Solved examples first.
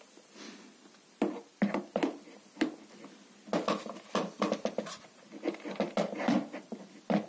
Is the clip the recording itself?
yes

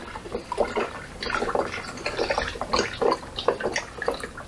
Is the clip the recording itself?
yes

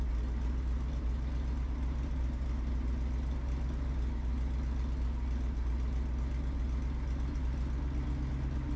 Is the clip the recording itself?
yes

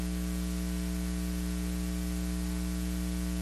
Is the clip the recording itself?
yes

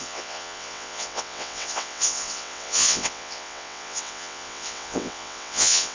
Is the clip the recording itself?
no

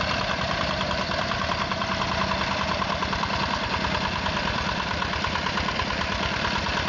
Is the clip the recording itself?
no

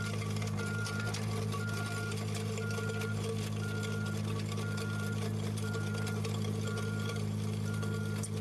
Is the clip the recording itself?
yes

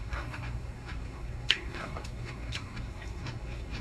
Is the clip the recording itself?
no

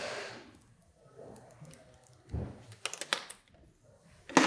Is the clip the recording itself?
yes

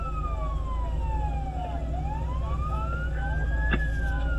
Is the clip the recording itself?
yes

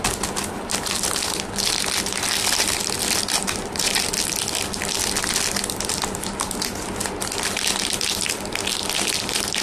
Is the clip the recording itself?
yes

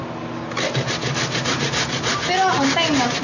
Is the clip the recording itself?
yes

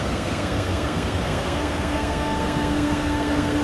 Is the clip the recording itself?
no